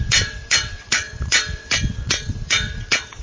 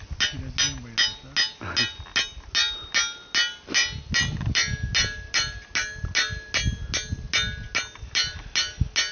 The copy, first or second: first